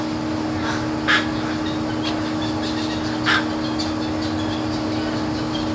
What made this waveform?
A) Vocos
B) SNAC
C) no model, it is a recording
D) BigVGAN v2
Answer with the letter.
C